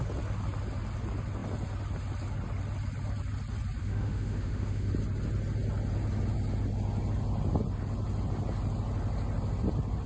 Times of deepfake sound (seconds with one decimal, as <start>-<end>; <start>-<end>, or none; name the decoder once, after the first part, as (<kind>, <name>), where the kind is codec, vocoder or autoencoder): 3.8-4.9 (autoencoder, DAC-VAE)